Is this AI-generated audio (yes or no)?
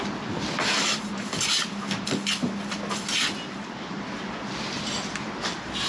no